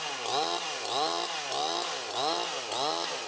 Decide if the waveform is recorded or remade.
recorded